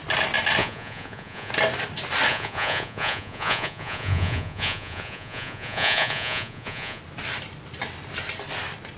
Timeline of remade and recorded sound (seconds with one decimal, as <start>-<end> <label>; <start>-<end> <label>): 0.0-0.6 recorded; 0.6-1.5 remade; 1.5-2.3 recorded; 2.3-7.0 remade; 7.0-9.0 recorded